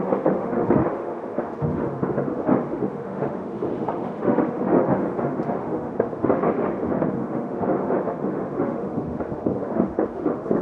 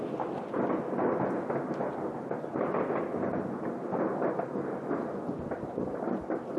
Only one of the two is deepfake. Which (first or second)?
first